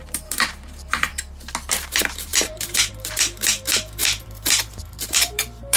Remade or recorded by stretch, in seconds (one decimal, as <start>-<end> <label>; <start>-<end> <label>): 0.0-1.1 remade; 1.1-1.7 recorded; 1.7-5.8 remade